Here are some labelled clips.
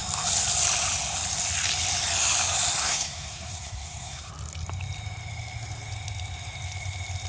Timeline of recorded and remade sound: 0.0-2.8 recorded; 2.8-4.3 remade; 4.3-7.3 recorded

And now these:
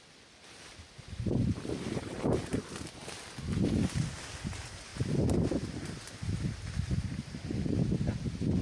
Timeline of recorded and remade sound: 0.0-8.6 recorded

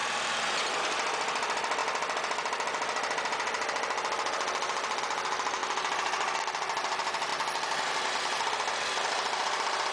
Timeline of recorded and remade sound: 0.0-0.8 remade; 0.8-7.3 recorded; 7.3-8.3 remade; 8.3-9.9 recorded

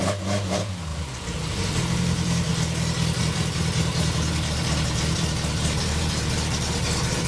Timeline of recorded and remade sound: 0.0-2.5 remade; 2.5-3.2 recorded; 3.2-7.3 remade

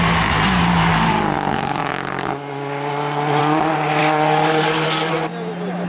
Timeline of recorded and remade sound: 0.0-4.0 recorded; 4.0-5.1 remade; 5.1-5.9 recorded

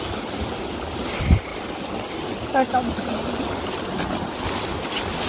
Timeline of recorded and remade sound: 0.0-5.3 recorded

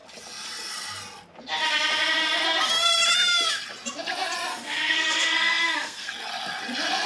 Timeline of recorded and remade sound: 0.0-4.5 recorded; 4.5-6.1 remade; 6.1-7.1 recorded

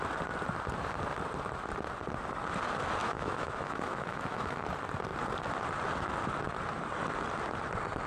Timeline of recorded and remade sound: 0.0-3.0 recorded; 3.0-4.6 remade; 4.6-8.1 recorded